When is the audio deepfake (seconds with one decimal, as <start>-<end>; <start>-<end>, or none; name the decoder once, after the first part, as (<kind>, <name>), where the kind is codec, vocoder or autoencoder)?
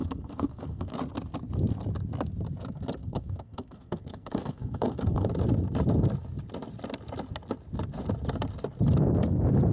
0.0-1.0 (codec, SNAC); 3.0-5.3